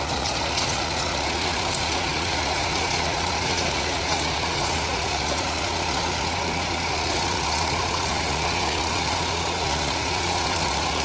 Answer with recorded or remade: remade